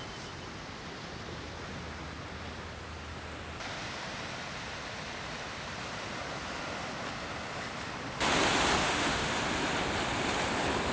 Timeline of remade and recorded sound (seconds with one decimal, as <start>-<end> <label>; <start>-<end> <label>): 0.0-8.8 recorded; 8.8-9.3 remade; 9.3-10.9 recorded